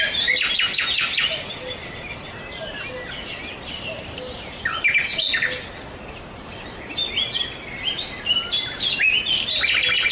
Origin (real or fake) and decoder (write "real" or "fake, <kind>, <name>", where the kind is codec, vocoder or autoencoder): real